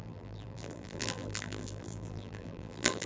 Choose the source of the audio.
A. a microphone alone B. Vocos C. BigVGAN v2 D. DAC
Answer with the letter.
C